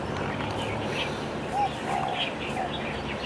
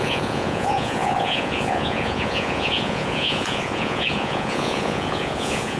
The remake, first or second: second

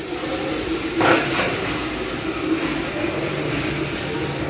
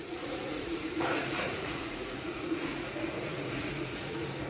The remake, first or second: second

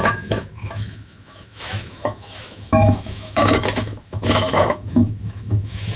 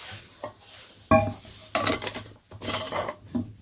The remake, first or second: first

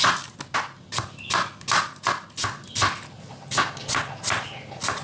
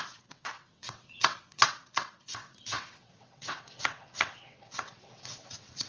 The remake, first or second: second